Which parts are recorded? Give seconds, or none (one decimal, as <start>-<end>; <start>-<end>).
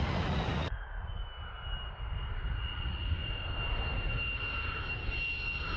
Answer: 1.2-2.4; 3.2-5.8